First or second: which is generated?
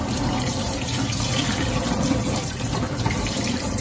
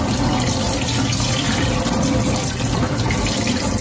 first